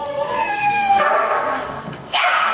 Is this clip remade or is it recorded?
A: remade